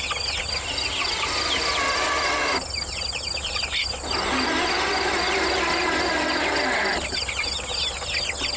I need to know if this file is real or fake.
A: real